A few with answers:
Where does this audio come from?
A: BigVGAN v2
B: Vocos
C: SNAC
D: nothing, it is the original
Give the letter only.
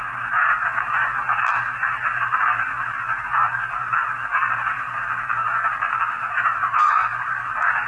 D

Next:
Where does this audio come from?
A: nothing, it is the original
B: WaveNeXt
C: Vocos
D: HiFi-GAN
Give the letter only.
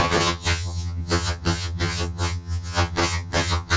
D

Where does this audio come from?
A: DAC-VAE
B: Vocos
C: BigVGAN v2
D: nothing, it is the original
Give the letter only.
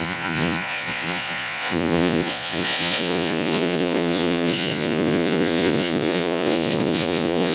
B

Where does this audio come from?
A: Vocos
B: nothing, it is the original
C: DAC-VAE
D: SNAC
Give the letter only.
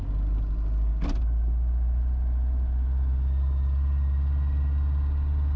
B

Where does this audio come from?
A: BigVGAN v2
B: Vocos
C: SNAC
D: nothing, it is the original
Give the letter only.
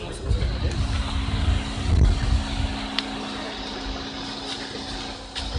D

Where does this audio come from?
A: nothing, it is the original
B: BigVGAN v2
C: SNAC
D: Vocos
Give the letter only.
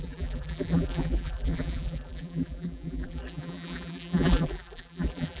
B